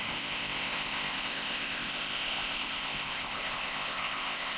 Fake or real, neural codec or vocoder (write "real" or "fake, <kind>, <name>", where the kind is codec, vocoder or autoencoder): fake, codec, ZipCodec